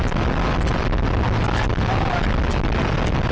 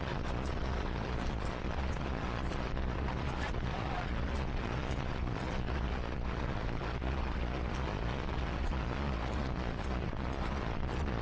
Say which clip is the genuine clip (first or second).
first